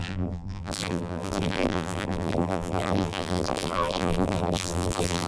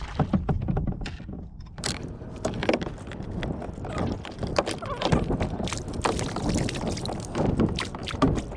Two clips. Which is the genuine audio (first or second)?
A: second